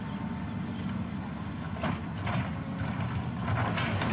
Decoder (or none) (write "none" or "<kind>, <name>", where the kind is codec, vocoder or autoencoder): none